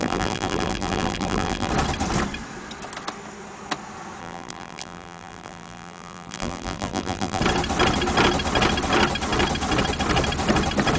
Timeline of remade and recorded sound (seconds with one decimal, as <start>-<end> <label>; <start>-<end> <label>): 0.0-1.7 remade; 1.7-4.2 recorded; 4.2-7.4 remade; 7.4-11.0 recorded